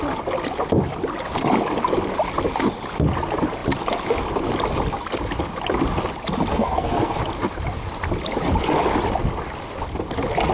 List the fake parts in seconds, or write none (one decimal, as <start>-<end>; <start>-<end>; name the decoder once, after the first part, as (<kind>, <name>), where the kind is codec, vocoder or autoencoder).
6.5-7.2 (codec, SNAC)